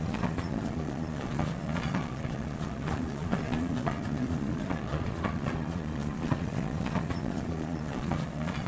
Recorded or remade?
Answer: remade